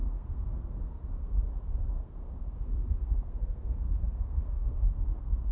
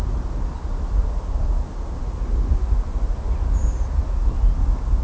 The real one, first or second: second